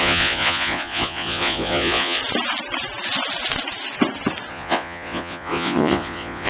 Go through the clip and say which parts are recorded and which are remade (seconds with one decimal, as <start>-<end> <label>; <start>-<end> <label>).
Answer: 0.0-2.2 remade; 2.2-4.5 recorded; 4.5-6.5 remade